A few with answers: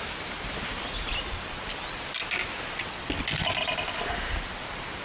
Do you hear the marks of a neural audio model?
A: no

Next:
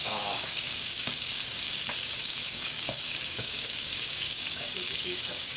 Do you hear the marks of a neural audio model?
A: yes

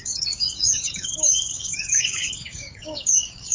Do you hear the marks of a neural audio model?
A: yes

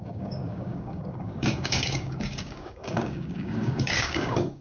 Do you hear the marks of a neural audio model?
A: yes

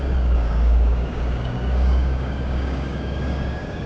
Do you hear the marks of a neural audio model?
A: yes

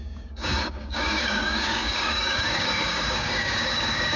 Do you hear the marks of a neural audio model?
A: yes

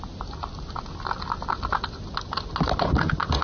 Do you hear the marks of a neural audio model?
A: no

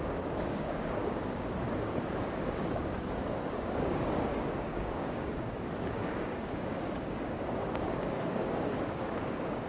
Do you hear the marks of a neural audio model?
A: yes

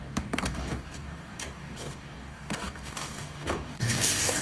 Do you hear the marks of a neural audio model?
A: yes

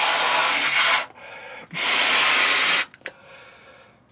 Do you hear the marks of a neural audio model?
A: no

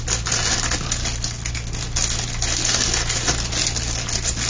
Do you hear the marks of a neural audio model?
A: no